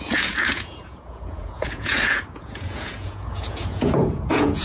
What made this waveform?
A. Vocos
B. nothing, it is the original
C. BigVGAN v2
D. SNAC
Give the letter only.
A